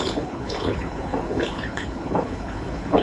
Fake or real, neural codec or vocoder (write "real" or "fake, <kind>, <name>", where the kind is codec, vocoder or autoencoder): fake, codec, HILCodec